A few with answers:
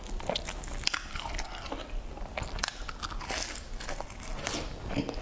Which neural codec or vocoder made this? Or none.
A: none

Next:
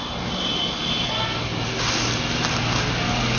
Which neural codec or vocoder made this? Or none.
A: none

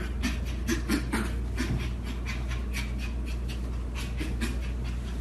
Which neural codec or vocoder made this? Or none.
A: none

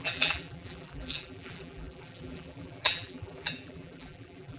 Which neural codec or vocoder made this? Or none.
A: vocoder, BigVGAN v2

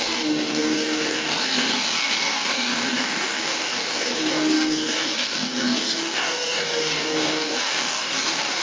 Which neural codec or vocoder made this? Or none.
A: codec, DAC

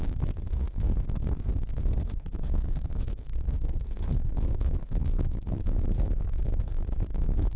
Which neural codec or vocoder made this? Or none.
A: codec, SNAC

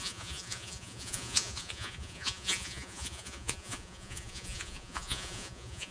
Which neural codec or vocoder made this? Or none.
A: vocoder, Vocos